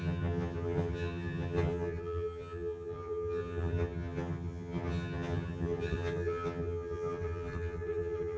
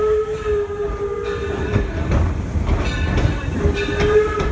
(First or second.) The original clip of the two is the second